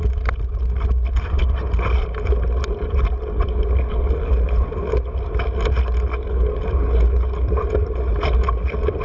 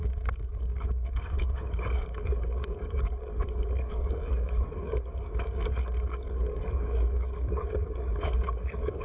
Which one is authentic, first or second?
first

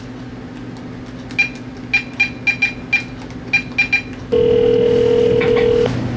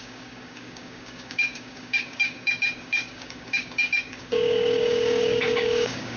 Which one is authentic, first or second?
first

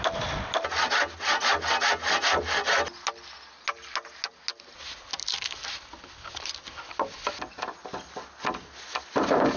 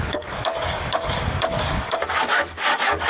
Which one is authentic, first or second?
first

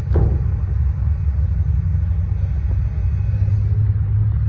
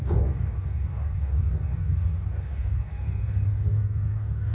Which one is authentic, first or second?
first